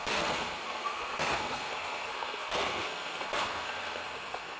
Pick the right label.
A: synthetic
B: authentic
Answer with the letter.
A